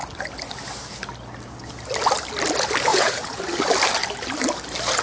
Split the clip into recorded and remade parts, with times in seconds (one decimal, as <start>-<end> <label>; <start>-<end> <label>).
0.0-2.9 recorded; 2.9-3.4 remade; 3.4-5.0 recorded